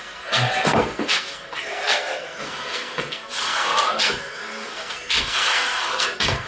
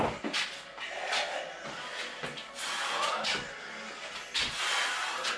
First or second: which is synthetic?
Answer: first